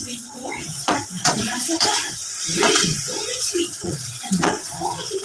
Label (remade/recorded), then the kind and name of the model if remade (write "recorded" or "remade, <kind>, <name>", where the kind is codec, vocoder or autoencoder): remade, vocoder, Vocos